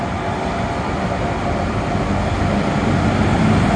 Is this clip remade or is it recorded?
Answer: recorded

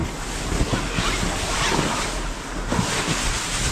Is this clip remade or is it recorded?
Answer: recorded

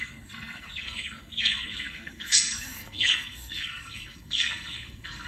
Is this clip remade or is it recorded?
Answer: remade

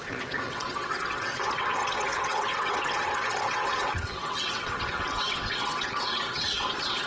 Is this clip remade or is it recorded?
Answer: remade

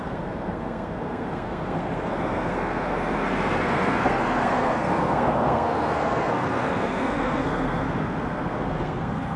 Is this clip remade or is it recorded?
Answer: remade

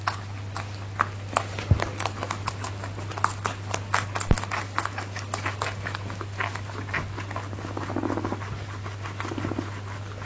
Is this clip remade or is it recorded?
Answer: recorded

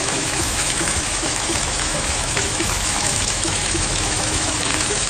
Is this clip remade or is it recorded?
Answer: remade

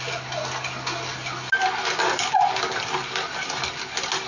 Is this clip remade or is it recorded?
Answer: recorded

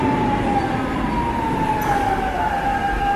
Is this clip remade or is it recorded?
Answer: recorded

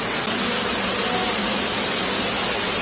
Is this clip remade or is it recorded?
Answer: recorded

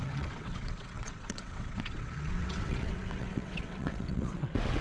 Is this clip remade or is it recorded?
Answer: remade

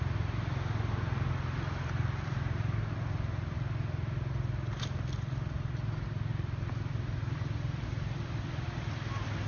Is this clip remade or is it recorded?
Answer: recorded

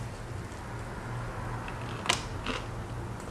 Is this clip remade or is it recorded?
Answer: recorded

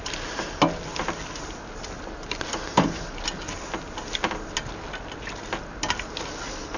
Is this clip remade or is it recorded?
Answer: recorded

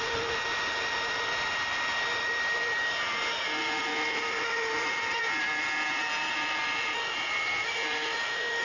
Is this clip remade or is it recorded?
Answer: recorded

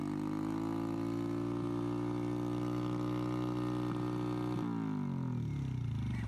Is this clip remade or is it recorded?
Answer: recorded